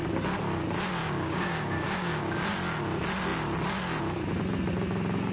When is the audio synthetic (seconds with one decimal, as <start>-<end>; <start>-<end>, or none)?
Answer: 1.0-2.5